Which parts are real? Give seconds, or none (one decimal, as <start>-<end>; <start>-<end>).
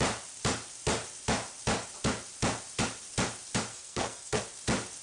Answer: 0.0-3.7; 4.4-5.0